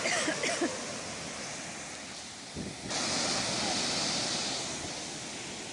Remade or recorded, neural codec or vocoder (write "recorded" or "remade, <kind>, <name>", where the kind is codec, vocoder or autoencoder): recorded